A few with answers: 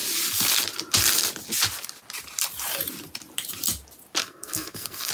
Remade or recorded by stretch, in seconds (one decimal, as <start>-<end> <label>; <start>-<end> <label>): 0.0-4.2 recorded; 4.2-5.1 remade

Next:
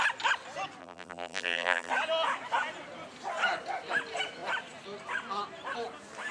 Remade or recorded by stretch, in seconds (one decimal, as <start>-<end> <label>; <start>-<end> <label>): 0.0-0.8 recorded; 0.8-1.9 remade; 1.9-6.3 recorded

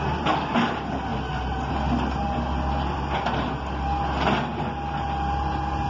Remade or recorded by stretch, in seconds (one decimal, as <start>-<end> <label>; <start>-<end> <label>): 0.0-5.9 recorded